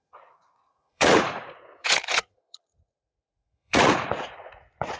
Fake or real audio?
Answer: fake